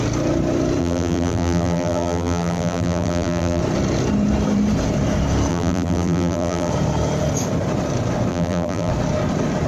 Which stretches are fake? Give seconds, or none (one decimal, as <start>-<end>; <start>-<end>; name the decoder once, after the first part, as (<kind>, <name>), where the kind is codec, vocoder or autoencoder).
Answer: 0.8-3.6 (vocoder, BigVGAN v2); 5.5-6.7; 8.3-8.9